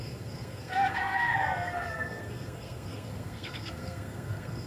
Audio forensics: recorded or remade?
remade